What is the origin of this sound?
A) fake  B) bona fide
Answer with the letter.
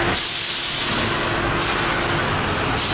B